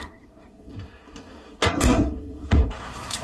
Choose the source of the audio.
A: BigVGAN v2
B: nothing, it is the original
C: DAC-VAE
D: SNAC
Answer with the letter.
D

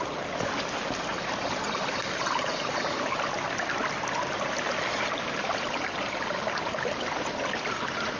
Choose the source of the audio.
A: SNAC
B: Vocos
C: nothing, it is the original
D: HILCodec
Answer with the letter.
C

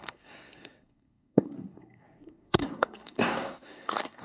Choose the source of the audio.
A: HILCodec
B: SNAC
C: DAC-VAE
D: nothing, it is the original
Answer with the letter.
B